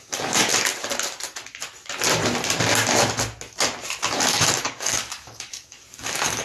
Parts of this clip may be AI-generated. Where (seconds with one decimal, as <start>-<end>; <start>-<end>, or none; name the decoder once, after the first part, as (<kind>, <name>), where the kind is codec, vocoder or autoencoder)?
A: 0.0-0.5 (codec, DAC); 4.3-6.4